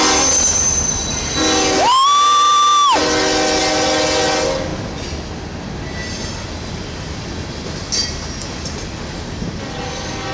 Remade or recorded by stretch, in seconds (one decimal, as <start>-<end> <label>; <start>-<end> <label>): 0.0-10.3 recorded